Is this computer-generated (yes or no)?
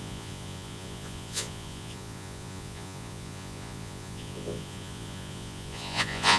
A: yes